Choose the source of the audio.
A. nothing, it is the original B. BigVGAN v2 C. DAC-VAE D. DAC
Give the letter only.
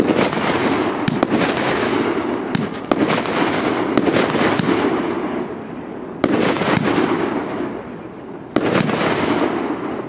A